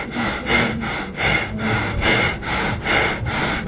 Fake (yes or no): no